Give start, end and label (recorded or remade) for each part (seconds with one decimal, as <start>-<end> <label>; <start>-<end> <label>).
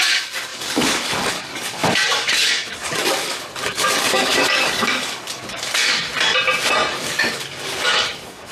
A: 0.0-6.1 remade; 6.1-6.9 recorded; 6.9-8.5 remade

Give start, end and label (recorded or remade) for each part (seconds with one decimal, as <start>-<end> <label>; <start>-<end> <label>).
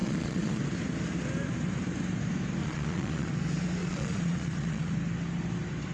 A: 0.0-0.6 remade; 0.6-2.6 recorded; 2.6-3.3 remade; 3.3-3.8 recorded; 3.8-4.9 remade; 4.9-5.9 recorded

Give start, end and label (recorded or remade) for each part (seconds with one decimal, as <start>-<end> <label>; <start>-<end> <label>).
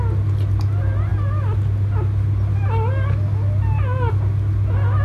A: 0.0-5.0 recorded